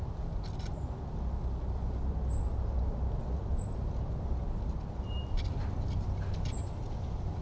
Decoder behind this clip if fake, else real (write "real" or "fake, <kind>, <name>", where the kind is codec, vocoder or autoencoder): real